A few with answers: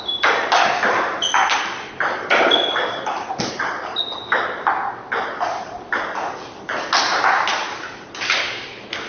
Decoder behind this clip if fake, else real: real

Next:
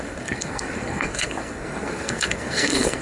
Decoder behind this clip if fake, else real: fake, codec, SNAC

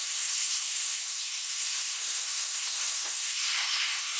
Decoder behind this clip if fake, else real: fake, codec, SNAC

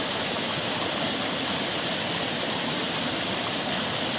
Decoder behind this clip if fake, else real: real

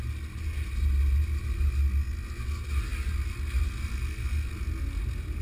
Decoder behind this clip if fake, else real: real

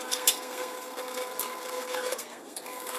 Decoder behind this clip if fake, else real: fake, codec, SNAC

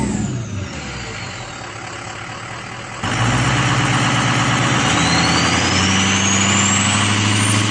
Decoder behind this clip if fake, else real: real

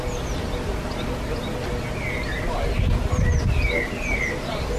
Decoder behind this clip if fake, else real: real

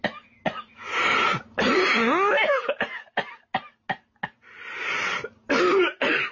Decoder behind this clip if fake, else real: real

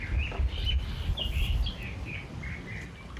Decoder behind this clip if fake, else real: real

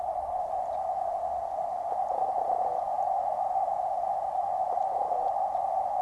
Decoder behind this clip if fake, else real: real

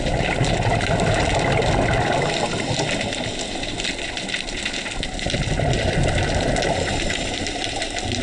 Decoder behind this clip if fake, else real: real